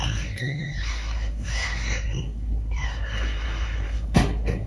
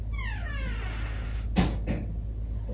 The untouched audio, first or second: second